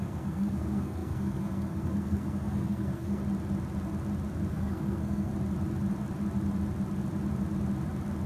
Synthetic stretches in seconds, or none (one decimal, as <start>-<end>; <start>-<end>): 0.0-3.2; 4.5-5.3